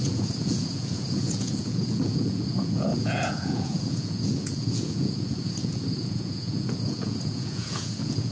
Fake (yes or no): yes